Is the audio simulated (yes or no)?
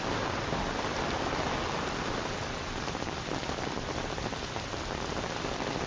yes